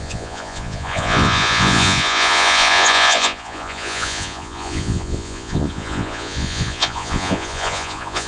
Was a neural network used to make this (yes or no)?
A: yes